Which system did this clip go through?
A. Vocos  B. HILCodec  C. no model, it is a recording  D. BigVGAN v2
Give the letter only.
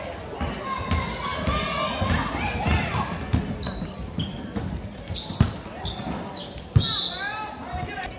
C